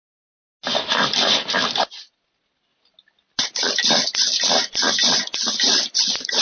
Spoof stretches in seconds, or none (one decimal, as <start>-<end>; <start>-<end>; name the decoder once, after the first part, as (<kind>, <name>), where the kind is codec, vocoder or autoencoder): none